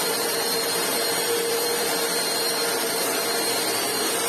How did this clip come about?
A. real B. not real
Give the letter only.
B